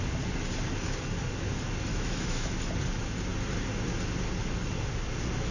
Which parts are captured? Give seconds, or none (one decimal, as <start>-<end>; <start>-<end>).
0.0-1.9; 2.5-5.5